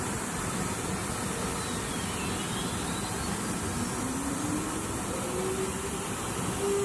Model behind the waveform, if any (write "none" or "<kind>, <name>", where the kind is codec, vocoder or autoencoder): none